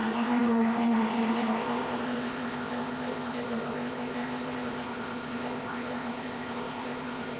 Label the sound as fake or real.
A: fake